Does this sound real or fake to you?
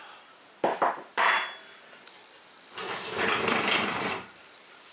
fake